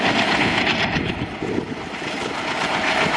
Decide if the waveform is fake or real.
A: real